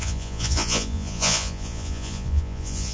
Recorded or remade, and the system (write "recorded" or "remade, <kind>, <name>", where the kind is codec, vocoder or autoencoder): remade, vocoder, Vocos